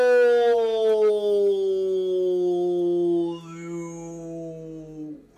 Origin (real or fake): real